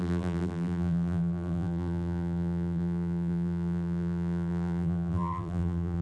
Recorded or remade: remade